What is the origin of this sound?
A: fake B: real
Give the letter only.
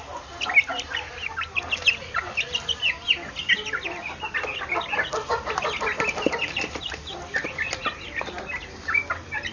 B